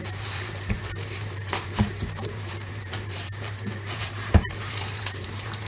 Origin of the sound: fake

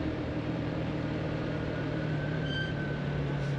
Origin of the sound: fake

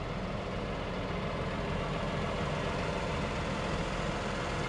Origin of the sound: real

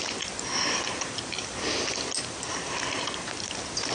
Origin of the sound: real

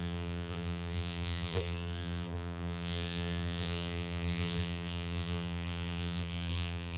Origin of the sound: fake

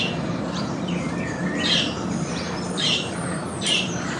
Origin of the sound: fake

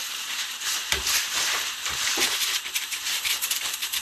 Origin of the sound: fake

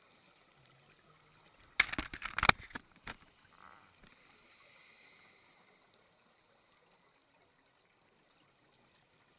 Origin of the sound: real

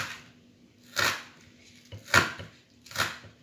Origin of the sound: real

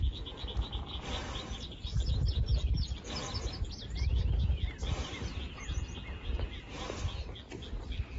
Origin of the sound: real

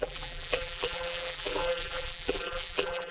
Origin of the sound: fake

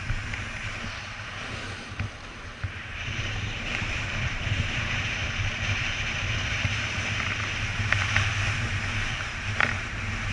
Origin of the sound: fake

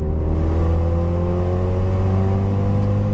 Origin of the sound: real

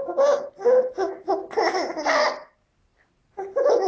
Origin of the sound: real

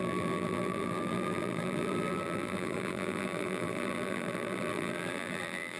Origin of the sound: fake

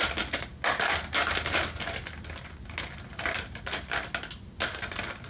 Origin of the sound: real